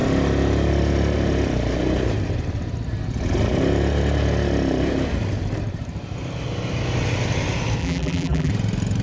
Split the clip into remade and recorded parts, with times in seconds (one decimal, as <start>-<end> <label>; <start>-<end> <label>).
0.0-7.8 recorded; 7.8-8.5 remade; 8.5-9.0 recorded